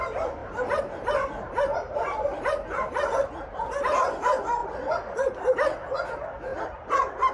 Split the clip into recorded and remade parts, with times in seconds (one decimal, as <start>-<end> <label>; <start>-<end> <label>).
0.0-0.4 recorded; 0.4-3.5 remade; 3.5-6.5 recorded; 6.5-7.3 remade